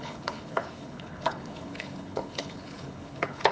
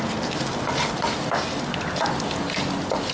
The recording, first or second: second